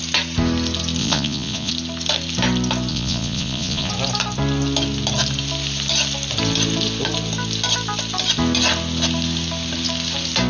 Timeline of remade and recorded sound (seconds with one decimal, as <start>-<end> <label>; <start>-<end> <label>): 0.0-1.0 recorded; 1.0-1.7 remade; 1.7-2.9 recorded; 2.9-3.9 remade; 3.9-10.5 recorded